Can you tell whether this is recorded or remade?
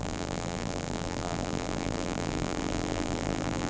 remade